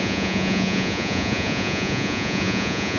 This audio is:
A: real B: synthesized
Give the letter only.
B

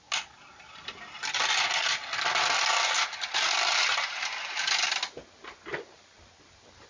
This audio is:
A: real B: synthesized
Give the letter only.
A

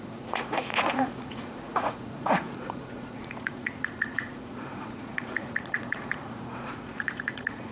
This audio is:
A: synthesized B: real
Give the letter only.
A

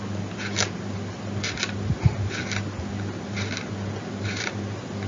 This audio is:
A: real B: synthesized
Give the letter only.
A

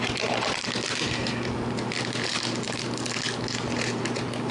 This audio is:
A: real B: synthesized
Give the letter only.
A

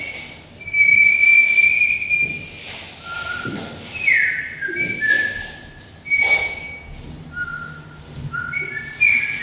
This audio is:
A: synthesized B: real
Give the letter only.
B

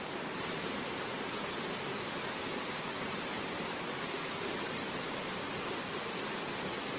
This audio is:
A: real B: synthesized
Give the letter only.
A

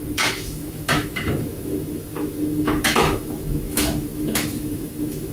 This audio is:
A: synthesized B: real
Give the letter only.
A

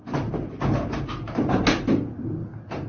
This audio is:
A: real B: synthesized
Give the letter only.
A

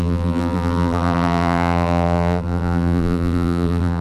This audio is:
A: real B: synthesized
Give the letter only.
B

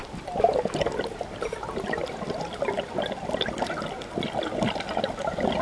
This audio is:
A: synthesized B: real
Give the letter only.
B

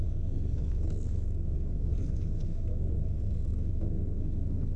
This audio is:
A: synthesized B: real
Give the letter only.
A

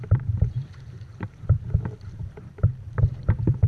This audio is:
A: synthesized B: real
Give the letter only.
A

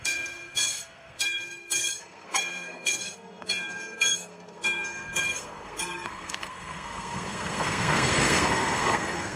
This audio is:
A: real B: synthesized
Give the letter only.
B